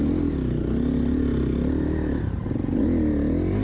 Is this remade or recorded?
recorded